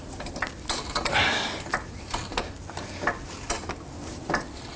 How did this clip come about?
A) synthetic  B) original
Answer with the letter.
B